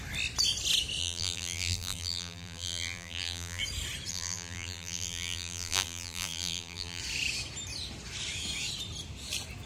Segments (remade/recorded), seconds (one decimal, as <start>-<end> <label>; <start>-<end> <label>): 0.0-1.0 recorded; 1.0-3.6 remade; 3.6-4.1 recorded; 4.1-7.0 remade; 7.0-9.7 recorded